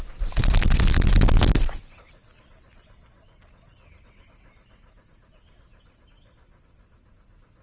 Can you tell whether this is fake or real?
real